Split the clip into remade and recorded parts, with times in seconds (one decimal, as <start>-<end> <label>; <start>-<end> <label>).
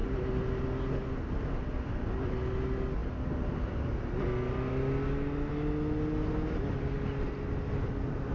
0.0-8.3 recorded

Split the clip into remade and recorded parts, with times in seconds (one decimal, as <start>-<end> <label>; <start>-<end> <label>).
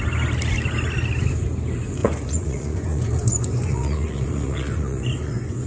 0.0-2.0 recorded; 2.0-5.7 remade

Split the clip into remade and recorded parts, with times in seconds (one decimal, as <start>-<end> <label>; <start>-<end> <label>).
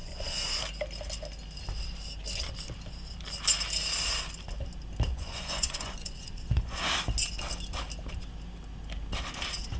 0.0-0.6 remade; 0.6-5.1 recorded; 5.1-6.9 remade; 6.9-9.8 recorded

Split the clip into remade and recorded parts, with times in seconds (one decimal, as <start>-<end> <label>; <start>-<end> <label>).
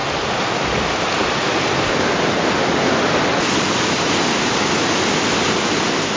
0.0-6.2 recorded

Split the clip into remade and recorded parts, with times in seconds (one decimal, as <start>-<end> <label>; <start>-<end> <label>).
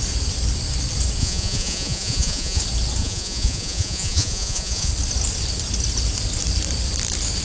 0.0-1.2 recorded; 1.2-2.6 remade; 2.6-3.0 recorded; 3.0-4.9 remade; 4.9-7.4 recorded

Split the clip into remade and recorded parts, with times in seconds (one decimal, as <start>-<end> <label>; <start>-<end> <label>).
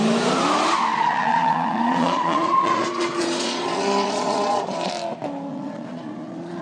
0.0-0.9 recorded; 0.9-4.9 remade; 4.9-5.5 recorded; 5.5-6.6 remade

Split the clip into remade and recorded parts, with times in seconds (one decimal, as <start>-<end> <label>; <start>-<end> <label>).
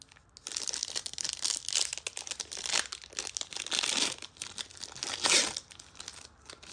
0.0-6.7 recorded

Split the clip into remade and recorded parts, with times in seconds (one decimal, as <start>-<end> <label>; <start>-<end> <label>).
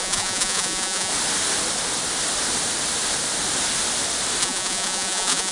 0.0-1.1 remade; 1.1-4.4 recorded; 4.4-5.5 remade